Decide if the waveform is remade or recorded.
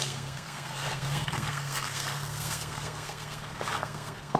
remade